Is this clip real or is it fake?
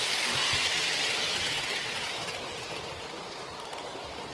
real